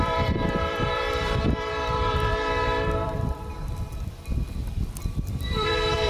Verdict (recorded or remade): remade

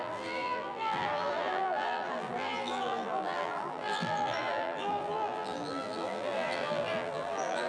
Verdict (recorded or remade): remade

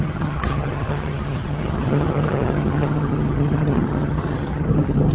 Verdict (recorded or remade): remade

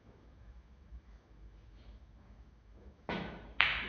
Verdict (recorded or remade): remade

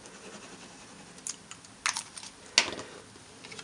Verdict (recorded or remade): recorded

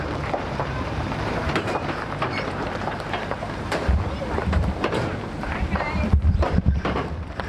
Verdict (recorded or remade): remade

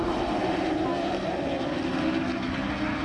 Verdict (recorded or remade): recorded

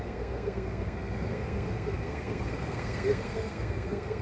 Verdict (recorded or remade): remade